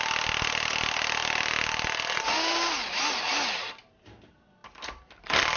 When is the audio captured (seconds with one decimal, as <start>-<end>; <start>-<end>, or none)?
0.0-5.6